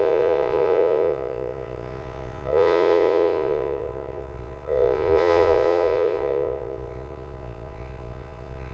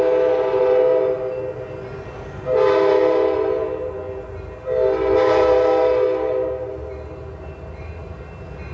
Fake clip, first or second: first